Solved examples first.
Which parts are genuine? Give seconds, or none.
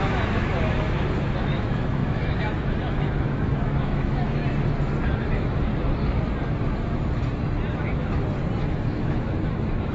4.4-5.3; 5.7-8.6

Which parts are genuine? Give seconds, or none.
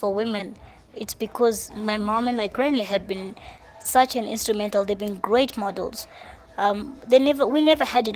0.4-1.7; 3.0-7.5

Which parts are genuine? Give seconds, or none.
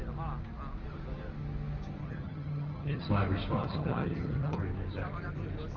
0.0-2.0; 3.1-3.6; 4.6-5.8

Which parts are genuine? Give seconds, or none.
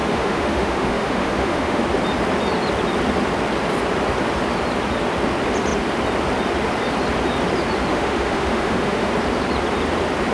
1.8-7.9; 9.1-10.3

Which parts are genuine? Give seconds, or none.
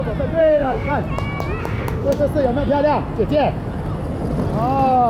0.0-0.4; 0.9-1.6; 2.2-5.1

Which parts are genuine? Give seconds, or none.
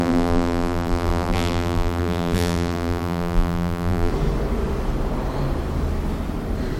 4.1-6.8